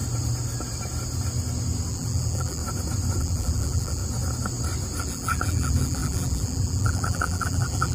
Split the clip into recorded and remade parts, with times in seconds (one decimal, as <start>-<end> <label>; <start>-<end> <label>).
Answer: 0.0-1.9 recorded; 1.9-2.6 remade; 2.6-3.2 recorded; 3.2-4.0 remade; 4.0-5.0 recorded; 5.0-7.9 remade

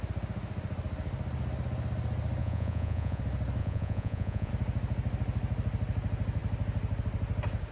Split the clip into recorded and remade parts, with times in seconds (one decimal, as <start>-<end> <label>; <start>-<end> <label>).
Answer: 0.0-2.4 recorded; 2.4-3.2 remade; 3.2-3.6 recorded; 3.6-4.5 remade; 4.5-7.7 recorded

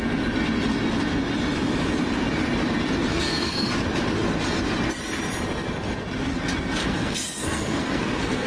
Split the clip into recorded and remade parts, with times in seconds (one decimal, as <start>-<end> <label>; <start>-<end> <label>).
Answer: 0.0-3.1 recorded; 3.1-3.7 remade; 3.7-6.8 recorded; 6.8-8.5 remade

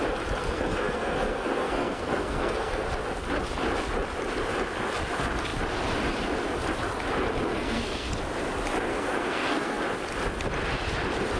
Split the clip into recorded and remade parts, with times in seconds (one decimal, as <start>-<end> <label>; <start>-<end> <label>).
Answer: 0.0-0.4 recorded; 0.4-2.9 remade; 2.9-7.5 recorded; 7.5-8.1 remade; 8.1-8.9 recorded; 8.9-9.8 remade; 9.8-11.4 recorded

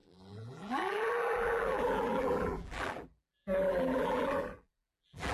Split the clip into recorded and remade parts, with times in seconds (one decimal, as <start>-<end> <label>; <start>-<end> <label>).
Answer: 0.0-5.3 remade

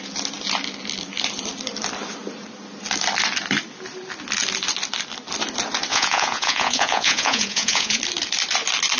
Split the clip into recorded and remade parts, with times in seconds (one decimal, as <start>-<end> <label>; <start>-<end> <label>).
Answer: 0.0-5.9 recorded; 5.9-8.0 remade; 8.0-9.0 recorded

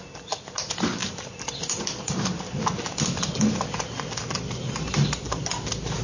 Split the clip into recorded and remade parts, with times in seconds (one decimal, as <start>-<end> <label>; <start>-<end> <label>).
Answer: 0.0-1.0 recorded; 1.0-1.8 remade; 1.8-6.0 recorded

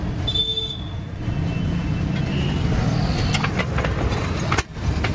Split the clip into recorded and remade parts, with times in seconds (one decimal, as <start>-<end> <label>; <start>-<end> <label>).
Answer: 0.0-5.1 recorded